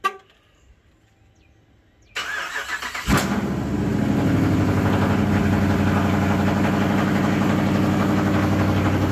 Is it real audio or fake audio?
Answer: real